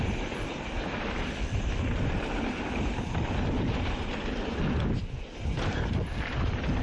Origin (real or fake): real